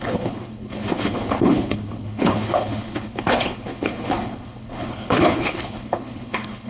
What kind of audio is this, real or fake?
fake